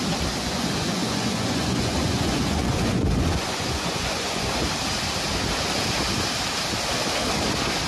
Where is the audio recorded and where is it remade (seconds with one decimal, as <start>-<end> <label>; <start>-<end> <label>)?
0.0-0.4 recorded; 0.4-4.6 remade; 4.6-7.9 recorded